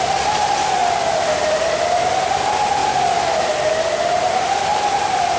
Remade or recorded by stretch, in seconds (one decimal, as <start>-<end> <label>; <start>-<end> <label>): 0.0-5.4 recorded